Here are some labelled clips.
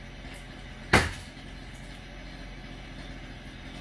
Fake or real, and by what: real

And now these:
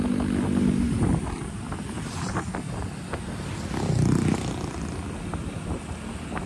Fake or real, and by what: real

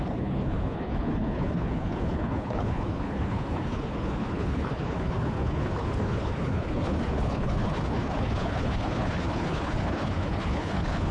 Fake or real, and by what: fake, codec, HILCodec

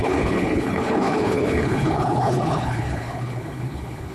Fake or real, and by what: fake, codec, HILCodec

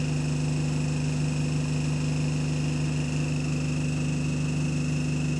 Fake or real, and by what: real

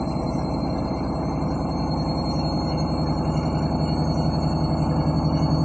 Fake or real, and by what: real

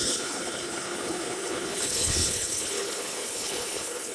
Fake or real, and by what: fake, codec, HILCodec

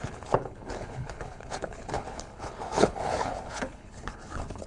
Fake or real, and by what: fake, codec, HILCodec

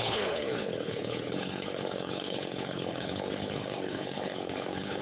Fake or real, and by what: fake, codec, HILCodec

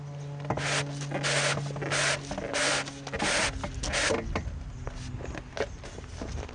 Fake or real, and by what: real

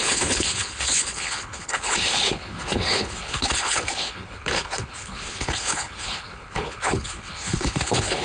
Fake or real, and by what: fake, codec, HILCodec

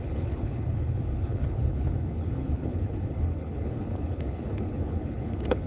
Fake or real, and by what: fake, codec, HILCodec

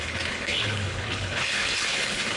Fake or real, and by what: fake, codec, HILCodec